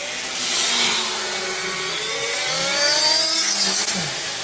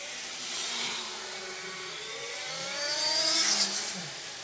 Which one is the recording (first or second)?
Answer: first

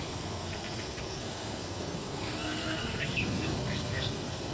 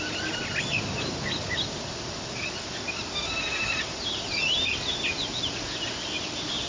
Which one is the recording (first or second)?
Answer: second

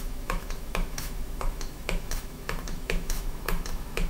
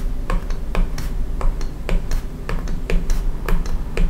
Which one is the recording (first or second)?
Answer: second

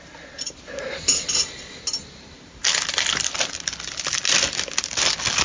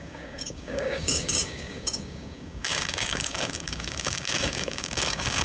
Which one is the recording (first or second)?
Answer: first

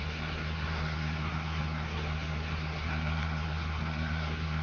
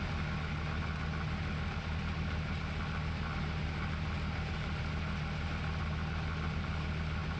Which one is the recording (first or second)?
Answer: second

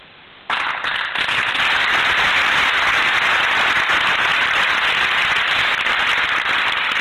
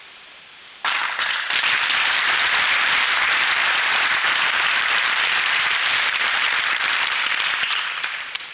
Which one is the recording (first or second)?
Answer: first